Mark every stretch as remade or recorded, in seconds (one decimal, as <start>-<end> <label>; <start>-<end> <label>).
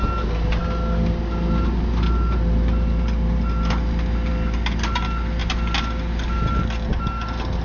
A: 0.0-7.6 recorded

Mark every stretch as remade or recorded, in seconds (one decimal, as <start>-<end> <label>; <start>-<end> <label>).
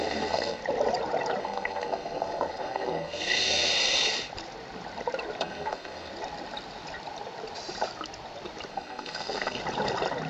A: 0.0-0.6 remade; 0.6-1.4 recorded; 1.4-3.7 remade; 3.7-5.4 recorded; 5.4-6.1 remade; 6.1-8.7 recorded; 8.7-9.6 remade; 9.6-10.3 recorded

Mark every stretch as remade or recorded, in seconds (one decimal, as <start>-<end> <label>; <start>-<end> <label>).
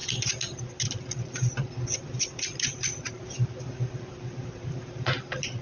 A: 0.0-5.6 recorded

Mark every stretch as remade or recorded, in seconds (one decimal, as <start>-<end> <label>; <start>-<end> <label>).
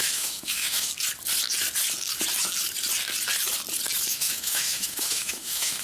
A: 0.0-0.9 remade; 0.9-4.1 recorded; 4.1-5.8 remade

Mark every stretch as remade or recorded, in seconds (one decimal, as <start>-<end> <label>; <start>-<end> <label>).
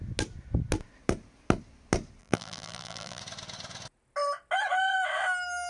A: 0.0-2.2 recorded; 2.2-3.2 remade; 3.2-5.7 recorded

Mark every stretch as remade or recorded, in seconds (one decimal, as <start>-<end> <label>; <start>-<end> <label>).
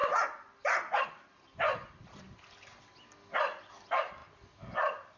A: 0.0-2.1 remade; 2.1-5.2 recorded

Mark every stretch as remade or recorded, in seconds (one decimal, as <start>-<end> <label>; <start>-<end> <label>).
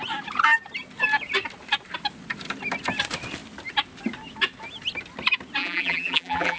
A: 0.0-5.6 recorded; 5.6-6.6 remade